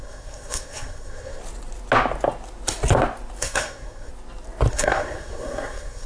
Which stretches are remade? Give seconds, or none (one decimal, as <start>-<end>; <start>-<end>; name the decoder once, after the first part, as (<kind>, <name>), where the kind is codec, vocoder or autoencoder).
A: 0.0-1.4 (codec, SNAC); 3.4-4.1; 4.7-6.1